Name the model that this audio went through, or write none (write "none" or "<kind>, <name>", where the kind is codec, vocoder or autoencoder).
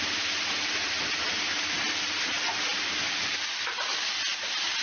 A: none